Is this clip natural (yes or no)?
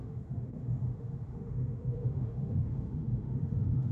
no